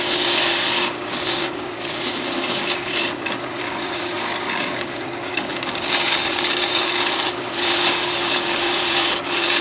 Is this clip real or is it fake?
fake